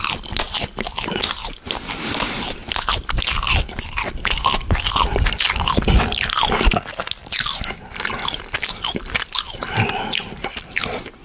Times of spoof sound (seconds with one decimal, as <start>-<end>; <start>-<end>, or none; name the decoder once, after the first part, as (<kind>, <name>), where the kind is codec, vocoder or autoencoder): none